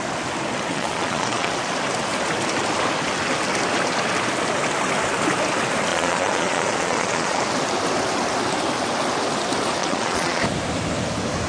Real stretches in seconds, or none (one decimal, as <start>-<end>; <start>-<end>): 0.0-0.7; 1.5-5.9; 7.4-9.8; 10.4-11.5